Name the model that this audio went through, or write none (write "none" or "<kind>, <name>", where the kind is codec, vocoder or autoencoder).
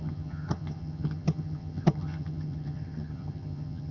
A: vocoder, HiFi-GAN